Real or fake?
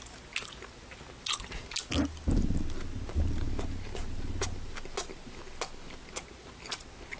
real